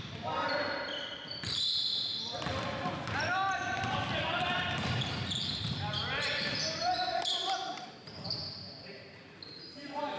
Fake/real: fake